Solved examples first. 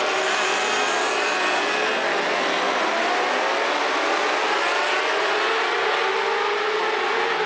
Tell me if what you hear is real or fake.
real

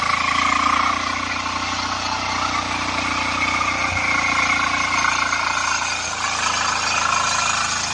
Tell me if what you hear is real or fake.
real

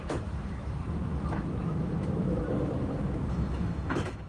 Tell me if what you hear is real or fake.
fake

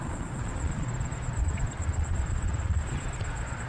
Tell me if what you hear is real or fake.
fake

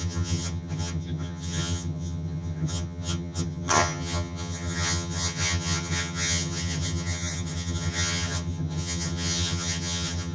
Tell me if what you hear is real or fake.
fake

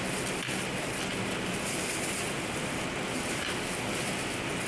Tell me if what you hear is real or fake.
real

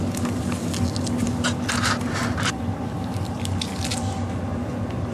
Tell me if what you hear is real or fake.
real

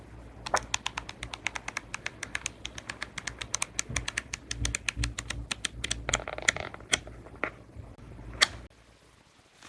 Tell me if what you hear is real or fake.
real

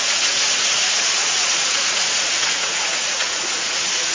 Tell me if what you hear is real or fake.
fake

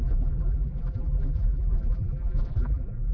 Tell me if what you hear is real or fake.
fake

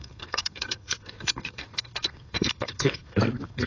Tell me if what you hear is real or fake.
fake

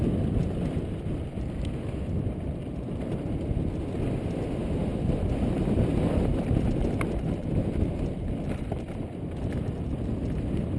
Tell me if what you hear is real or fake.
real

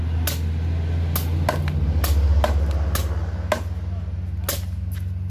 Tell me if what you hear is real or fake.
real